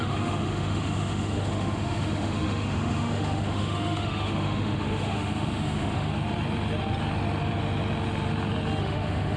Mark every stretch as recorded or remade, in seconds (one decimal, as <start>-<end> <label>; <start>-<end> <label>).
0.0-6.1 remade; 6.1-8.8 recorded; 8.8-9.4 remade